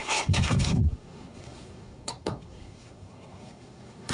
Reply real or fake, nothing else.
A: fake